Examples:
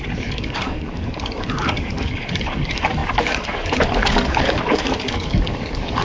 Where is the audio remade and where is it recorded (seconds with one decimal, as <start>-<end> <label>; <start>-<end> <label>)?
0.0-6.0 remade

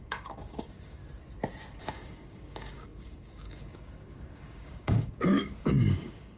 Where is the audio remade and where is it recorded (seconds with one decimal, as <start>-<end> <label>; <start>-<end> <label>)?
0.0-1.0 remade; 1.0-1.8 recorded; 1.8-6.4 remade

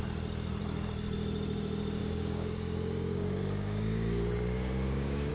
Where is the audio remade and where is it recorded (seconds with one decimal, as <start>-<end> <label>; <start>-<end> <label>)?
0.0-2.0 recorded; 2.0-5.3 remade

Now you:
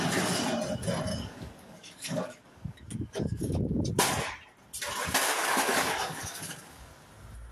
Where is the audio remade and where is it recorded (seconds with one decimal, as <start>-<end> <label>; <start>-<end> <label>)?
0.0-1.1 recorded; 1.1-3.8 remade; 3.8-5.2 recorded; 5.2-6.9 remade; 6.9-7.5 recorded